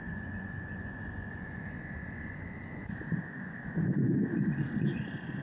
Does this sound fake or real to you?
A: fake